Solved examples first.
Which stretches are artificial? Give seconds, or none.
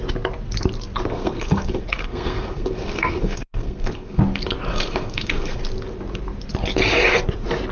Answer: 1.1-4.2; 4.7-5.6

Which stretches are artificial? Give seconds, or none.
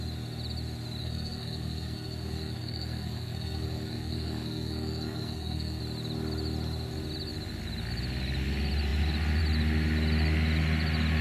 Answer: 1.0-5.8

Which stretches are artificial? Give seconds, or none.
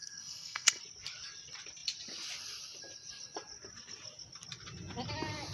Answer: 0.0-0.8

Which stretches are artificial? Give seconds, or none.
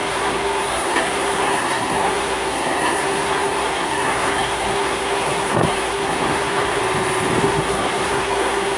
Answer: 0.0-6.8; 7.4-8.8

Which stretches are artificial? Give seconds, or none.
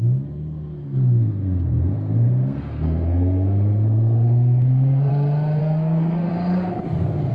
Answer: 0.7-5.1; 5.6-6.3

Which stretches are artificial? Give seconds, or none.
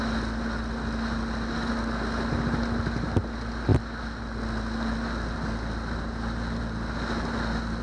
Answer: none